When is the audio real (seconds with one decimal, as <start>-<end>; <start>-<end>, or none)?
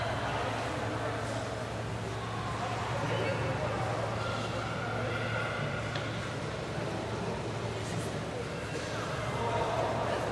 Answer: 0.0-10.3